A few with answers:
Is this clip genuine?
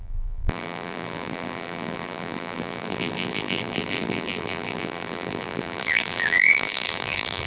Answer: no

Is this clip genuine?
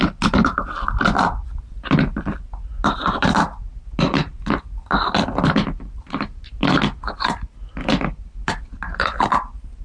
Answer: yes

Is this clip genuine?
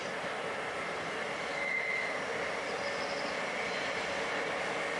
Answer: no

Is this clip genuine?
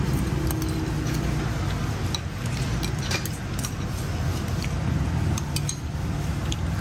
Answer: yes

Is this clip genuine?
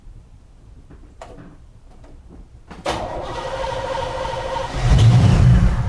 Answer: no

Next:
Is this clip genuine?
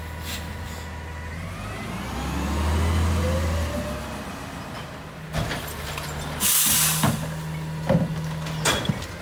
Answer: yes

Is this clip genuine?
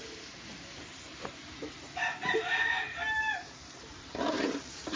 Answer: no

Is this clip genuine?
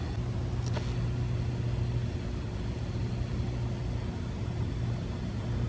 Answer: yes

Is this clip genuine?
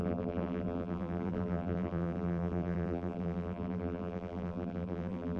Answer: no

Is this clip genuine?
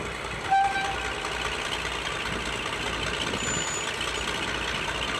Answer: yes